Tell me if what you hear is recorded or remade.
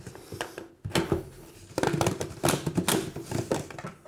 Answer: recorded